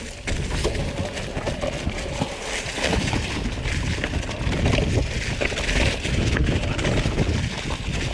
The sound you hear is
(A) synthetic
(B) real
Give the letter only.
B